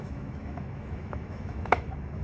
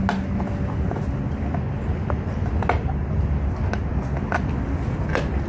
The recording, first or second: second